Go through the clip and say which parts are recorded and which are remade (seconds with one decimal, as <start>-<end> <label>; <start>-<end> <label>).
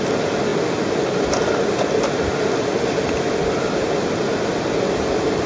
0.0-5.5 recorded